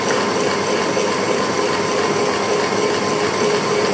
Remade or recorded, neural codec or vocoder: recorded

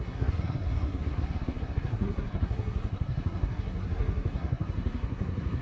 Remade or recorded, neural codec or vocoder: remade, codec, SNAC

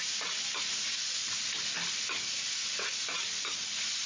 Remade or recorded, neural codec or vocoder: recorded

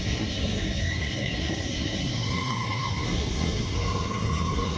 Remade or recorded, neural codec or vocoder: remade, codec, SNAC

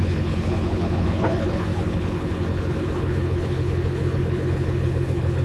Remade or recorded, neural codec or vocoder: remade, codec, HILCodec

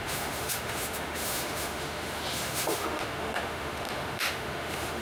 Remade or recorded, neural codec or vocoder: remade, autoencoder, DAC-VAE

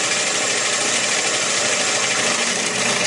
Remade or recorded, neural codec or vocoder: recorded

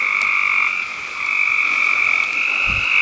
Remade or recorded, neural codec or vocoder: recorded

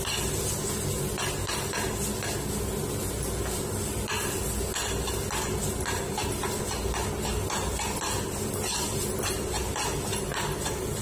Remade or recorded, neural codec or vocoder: recorded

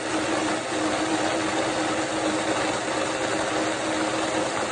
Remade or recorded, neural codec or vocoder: recorded